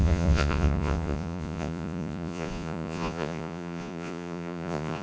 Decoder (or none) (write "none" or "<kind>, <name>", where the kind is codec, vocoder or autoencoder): vocoder, Vocos